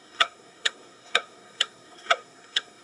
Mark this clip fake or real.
fake